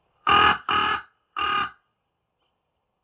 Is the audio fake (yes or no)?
no